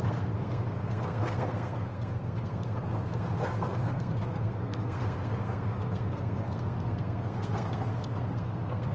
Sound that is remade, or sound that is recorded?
remade